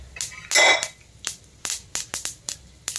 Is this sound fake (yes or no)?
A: no